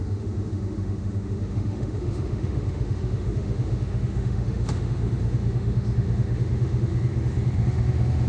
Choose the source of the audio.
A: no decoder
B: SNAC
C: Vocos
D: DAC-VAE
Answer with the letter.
D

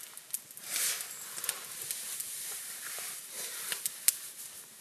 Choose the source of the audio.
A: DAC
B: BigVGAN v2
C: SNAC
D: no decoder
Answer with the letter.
D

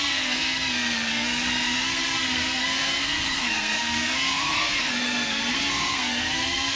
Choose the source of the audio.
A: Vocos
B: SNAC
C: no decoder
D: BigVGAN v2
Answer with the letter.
B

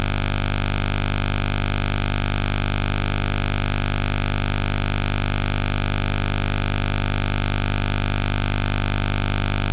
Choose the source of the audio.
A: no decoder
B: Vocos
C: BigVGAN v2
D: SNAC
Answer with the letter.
A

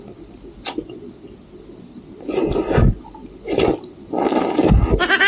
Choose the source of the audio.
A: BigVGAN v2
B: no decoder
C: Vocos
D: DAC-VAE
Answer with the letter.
B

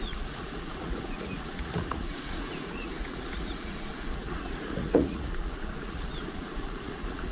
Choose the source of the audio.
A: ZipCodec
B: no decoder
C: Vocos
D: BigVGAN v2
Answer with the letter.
C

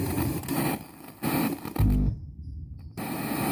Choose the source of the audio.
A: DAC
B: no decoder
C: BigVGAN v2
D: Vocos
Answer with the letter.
B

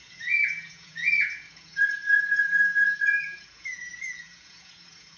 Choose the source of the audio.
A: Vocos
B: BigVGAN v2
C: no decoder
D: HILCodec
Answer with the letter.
A